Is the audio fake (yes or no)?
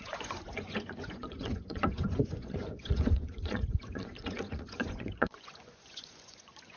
yes